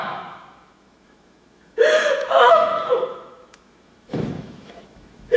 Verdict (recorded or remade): remade